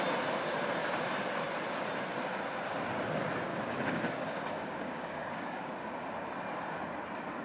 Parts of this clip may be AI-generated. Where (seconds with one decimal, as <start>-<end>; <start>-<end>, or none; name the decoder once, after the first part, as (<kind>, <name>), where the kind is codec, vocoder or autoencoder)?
3.5-5.9 (codec, DAC)